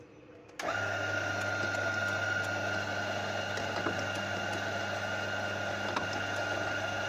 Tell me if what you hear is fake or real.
real